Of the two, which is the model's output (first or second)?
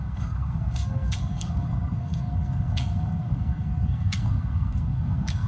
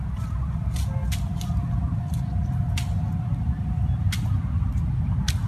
first